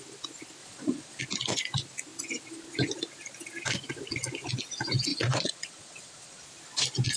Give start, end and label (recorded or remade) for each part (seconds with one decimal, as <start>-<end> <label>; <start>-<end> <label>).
0.0-0.6 recorded; 0.6-1.2 remade; 1.2-5.1 recorded; 5.1-6.4 remade; 6.4-7.2 recorded